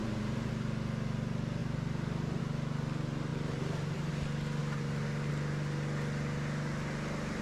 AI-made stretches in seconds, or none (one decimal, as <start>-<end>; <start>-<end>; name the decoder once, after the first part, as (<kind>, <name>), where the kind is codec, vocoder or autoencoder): 0.0-0.5 (vocoder, BigVGAN v2); 1.6-2.4; 3.3-4.1